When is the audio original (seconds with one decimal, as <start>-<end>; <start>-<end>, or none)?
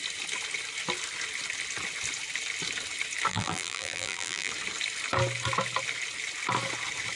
0.0-3.3; 4.5-7.2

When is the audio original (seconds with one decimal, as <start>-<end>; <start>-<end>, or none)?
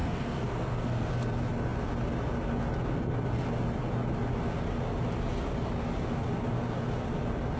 1.1-7.6